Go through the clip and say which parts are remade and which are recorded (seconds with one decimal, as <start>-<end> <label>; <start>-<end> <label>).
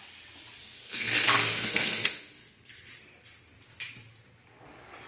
0.0-0.6 recorded; 0.6-2.9 remade; 2.9-5.1 recorded